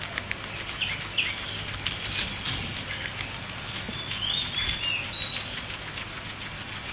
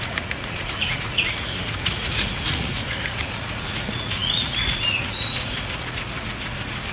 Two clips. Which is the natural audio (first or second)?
first